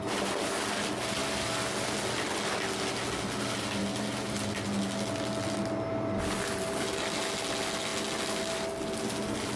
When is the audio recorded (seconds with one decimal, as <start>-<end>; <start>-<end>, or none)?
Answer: 0.0-9.6